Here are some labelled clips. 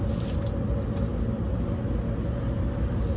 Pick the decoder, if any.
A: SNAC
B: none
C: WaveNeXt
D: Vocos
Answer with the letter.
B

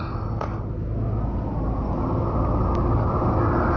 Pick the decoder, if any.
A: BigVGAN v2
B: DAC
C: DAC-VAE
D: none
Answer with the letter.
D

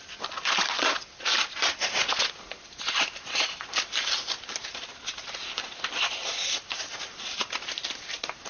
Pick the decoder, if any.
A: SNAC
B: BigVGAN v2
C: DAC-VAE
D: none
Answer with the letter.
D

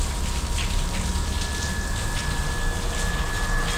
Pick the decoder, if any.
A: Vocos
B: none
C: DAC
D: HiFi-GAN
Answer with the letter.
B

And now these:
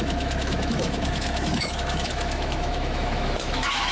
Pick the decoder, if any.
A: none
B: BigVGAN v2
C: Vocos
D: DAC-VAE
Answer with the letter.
D